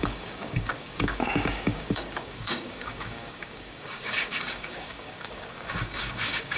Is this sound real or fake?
fake